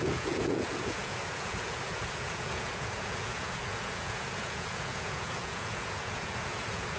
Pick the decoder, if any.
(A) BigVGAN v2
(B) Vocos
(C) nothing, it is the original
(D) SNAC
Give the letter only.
B